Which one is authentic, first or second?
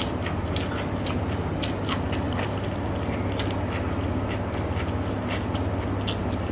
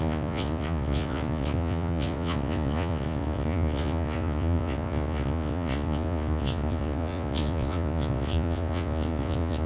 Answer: first